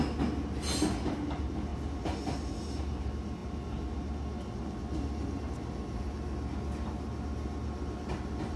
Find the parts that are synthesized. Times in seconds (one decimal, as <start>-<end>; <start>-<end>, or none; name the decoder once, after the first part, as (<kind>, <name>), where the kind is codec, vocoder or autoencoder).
none